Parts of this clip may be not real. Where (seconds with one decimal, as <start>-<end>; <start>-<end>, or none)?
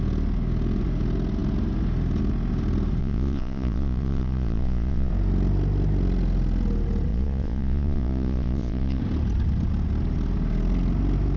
3.0-5.1; 7.1-9.0